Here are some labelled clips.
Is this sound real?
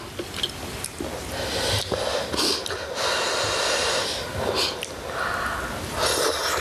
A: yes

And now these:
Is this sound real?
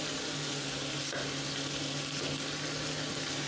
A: yes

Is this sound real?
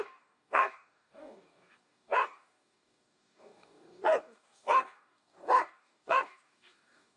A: no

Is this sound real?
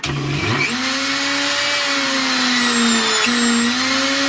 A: yes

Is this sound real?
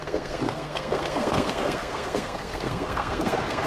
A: no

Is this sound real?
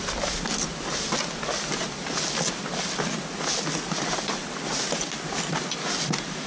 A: yes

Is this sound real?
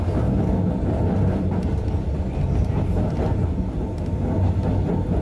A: yes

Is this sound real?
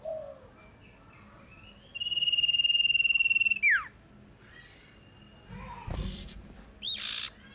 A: yes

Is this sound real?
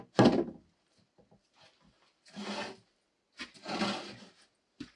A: yes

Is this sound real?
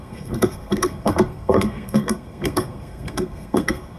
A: no